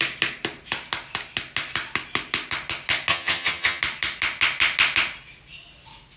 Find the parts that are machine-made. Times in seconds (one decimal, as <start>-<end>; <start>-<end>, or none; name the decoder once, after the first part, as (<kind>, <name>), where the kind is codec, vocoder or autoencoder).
3.1-3.8 (vocoder, HiFi-GAN)